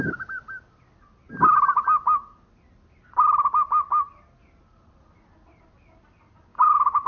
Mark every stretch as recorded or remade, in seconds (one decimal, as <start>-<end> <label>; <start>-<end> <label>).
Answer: 0.0-6.5 recorded; 6.5-7.1 remade